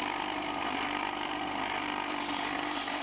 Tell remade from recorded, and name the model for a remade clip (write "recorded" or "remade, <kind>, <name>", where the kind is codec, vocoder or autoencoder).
remade, vocoder, BigVGAN v2